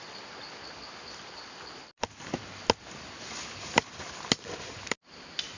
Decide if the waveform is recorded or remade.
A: recorded